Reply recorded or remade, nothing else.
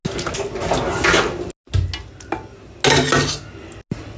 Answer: recorded